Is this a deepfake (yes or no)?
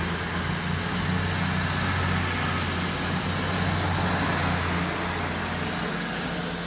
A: no